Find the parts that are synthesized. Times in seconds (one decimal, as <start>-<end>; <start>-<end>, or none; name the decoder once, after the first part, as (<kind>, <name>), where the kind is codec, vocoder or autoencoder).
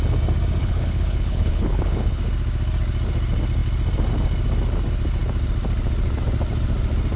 0.6-2.2 (codec, HILCodec)